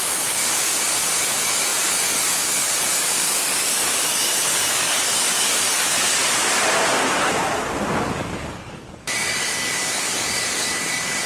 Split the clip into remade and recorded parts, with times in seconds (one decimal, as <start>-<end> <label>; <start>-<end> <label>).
0.0-6.2 remade; 6.2-8.4 recorded; 8.4-11.3 remade